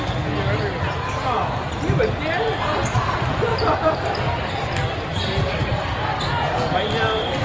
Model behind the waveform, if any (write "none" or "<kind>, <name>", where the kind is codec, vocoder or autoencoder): none